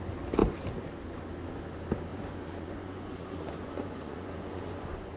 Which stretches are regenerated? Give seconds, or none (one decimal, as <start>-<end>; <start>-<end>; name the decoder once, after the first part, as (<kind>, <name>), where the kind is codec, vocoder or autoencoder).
2.1-5.2 (vocoder, Vocos)